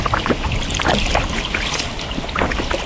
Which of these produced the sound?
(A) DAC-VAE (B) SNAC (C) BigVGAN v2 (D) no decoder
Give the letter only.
D